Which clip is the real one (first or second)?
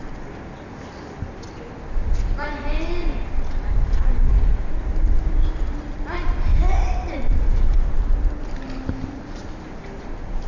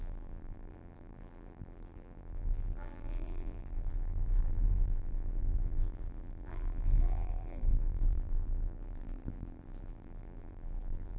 first